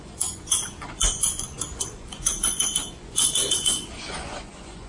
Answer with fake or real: fake